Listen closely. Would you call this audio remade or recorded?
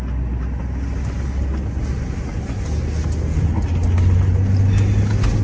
recorded